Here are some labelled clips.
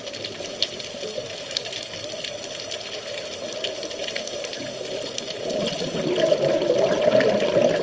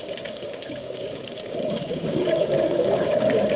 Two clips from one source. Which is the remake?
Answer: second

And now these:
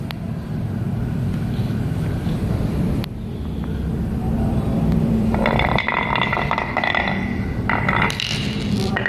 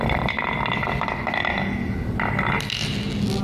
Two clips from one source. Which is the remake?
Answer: first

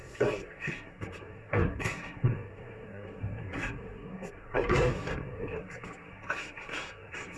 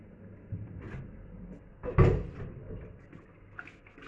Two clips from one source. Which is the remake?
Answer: first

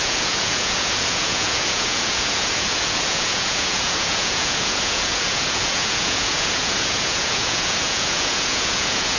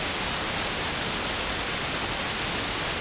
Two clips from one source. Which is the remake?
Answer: first